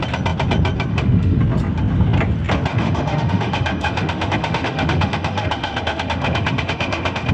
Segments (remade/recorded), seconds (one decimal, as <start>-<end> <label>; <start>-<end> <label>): 0.0-0.9 recorded; 0.9-1.4 remade; 1.4-2.7 recorded; 2.7-7.3 remade

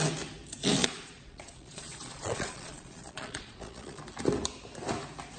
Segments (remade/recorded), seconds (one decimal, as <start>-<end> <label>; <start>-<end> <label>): 0.0-0.8 recorded; 0.8-4.0 remade; 4.0-5.4 recorded

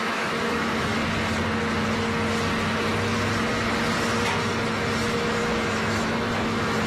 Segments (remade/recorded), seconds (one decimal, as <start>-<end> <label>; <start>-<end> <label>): 0.0-0.9 remade; 0.9-5.0 recorded; 5.0-6.9 remade

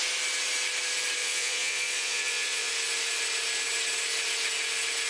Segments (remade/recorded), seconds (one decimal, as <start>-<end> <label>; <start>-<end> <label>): 0.0-1.2 recorded; 1.2-2.7 remade; 2.7-5.1 recorded